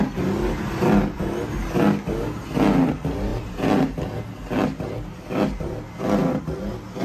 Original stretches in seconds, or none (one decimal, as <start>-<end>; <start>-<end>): 0.0-7.0